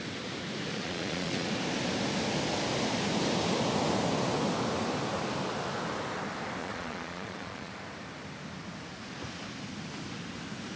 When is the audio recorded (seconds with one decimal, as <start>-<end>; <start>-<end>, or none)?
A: 0.0-0.7; 1.5-6.6; 7.7-10.8